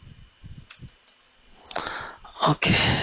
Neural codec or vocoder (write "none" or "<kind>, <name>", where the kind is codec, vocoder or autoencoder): none